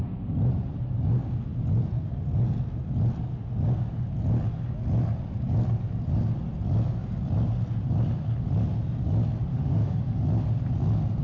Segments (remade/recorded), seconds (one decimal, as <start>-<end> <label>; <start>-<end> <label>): 0.0-9.5 recorded; 9.5-10.0 remade; 10.0-11.2 recorded